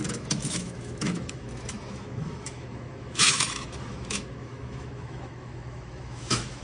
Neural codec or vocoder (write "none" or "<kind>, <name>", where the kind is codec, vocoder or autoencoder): autoencoder, DAC-VAE